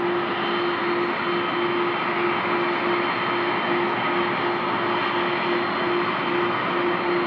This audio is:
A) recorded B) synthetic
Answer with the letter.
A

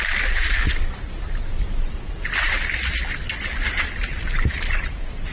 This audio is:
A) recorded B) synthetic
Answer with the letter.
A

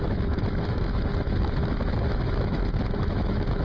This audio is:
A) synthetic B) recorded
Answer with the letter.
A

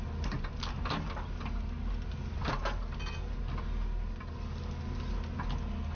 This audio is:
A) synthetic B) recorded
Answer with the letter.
B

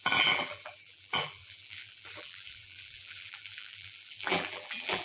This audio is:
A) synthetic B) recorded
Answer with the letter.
A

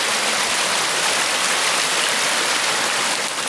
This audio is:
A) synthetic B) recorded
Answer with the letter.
B